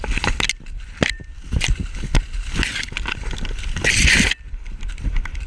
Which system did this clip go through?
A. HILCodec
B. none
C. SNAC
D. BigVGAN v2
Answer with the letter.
B